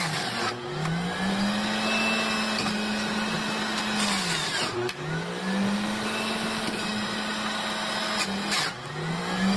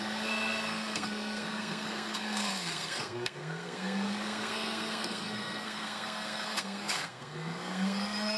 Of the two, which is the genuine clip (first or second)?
first